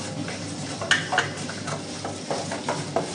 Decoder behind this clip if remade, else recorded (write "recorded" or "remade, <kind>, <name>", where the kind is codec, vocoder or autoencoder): recorded